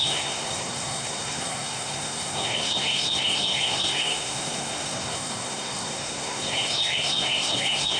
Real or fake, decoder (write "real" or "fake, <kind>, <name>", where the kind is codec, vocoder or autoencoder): fake, codec, SNAC